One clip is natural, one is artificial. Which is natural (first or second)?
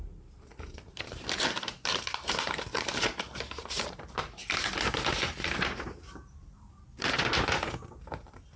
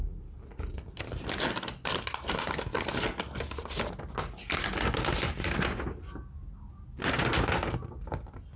second